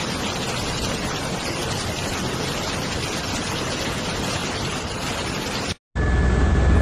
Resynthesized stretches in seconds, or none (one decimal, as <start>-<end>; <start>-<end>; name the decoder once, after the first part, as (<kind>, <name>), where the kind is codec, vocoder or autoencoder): 1.6-3.2 (vocoder, BigVGAN v2); 4.4-5.3